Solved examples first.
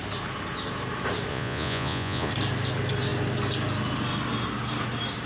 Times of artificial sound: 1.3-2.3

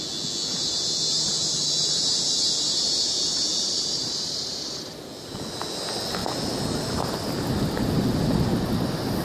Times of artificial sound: 0.5-4.8

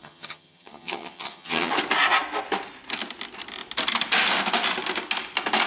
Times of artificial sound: 0.0-1.7